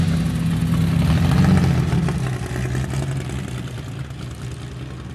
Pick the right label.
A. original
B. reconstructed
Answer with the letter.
A